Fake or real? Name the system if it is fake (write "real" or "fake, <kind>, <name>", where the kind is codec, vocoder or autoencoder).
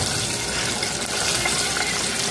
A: real